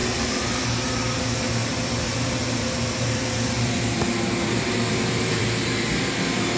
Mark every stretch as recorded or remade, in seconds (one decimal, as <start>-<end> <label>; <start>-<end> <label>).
0.0-0.5 remade; 0.5-1.6 recorded; 1.6-5.6 remade; 5.6-6.6 recorded